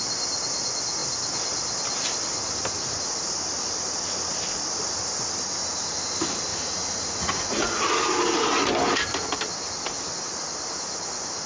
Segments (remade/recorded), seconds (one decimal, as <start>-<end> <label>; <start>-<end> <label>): 0.0-6.5 recorded; 6.5-7.9 remade; 7.9-11.5 recorded